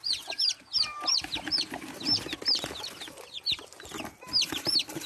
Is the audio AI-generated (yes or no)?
no